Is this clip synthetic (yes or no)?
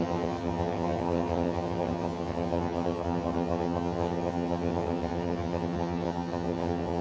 yes